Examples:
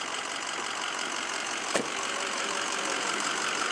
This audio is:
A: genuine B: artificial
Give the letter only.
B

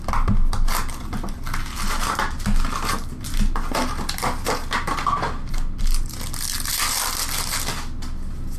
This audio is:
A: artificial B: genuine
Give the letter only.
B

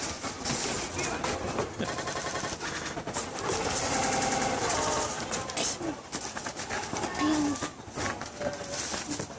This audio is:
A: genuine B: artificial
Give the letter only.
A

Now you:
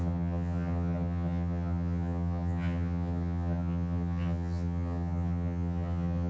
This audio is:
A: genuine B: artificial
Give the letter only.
B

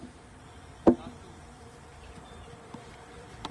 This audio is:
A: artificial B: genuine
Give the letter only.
A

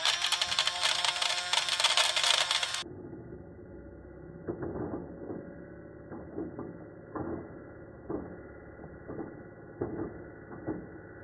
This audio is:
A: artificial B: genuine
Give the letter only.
B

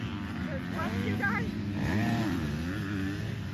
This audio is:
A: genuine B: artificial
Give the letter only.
A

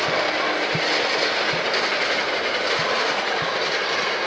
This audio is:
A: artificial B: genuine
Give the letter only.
B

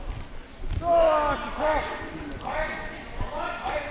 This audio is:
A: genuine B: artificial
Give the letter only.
A